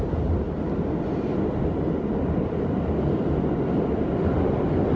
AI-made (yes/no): no